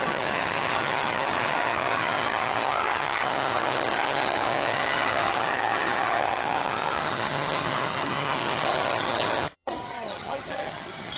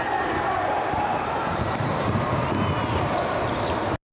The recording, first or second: second